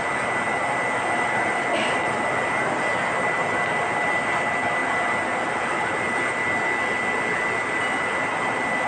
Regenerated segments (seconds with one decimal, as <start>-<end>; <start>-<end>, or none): none